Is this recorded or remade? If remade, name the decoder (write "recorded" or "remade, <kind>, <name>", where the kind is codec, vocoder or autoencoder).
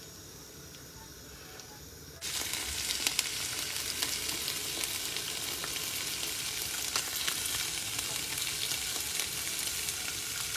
recorded